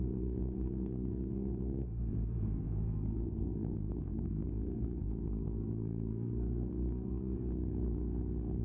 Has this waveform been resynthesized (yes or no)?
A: yes